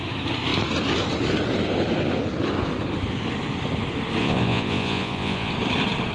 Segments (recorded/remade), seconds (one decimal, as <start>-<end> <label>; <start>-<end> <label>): 0.0-4.2 recorded; 4.2-5.5 remade; 5.5-6.1 recorded